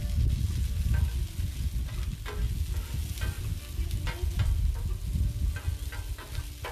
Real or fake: real